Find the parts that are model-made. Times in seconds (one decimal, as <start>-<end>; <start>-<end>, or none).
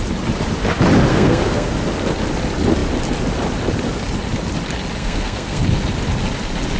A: 1.1-1.7; 5.0-5.6